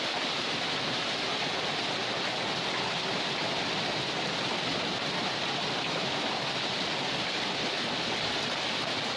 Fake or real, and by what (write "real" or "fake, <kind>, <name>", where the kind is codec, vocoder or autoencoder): real